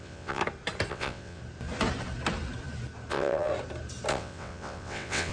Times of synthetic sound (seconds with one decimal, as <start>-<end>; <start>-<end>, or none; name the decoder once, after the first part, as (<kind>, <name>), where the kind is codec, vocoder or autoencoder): 0.0-0.4 (vocoder, WaveNeXt); 0.9-1.4; 3.1-3.5; 4.1-5.3

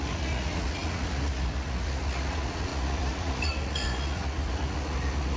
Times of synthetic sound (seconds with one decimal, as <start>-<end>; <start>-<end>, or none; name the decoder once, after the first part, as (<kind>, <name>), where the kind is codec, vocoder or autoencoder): 0.0-5.4 (vocoder, Vocos)